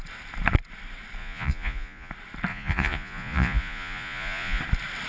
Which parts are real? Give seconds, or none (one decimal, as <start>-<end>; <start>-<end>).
0.0-1.2; 2.1-2.5; 4.6-5.1